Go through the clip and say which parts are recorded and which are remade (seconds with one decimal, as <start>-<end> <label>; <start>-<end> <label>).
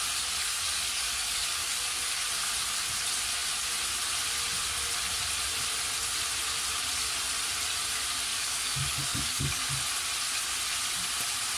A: 0.0-0.4 recorded; 0.4-2.3 remade; 2.3-8.3 recorded; 8.3-9.6 remade; 9.6-11.6 recorded